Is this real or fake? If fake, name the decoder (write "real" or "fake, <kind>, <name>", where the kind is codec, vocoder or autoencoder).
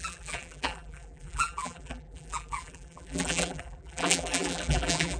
fake, vocoder, BigVGAN v2